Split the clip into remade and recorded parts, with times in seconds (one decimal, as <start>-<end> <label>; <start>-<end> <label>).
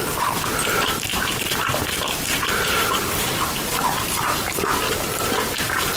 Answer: 0.0-1.1 recorded; 1.1-3.6 remade; 3.6-6.0 recorded